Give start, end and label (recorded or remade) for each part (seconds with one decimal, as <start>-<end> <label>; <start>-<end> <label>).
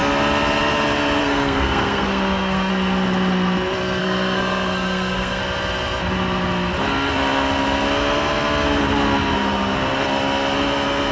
0.0-1.2 recorded; 1.2-2.7 remade; 2.7-4.0 recorded; 4.0-5.4 remade; 5.4-11.1 recorded